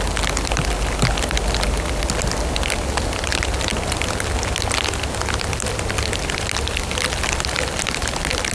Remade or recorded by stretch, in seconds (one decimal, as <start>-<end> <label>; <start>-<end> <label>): 0.0-8.5 recorded